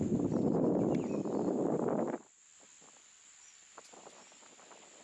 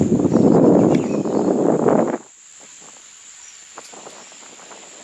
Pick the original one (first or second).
first